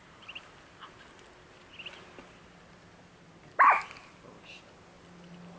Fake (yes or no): no